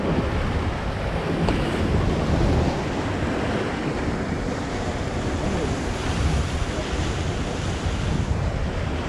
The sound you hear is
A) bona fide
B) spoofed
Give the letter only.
A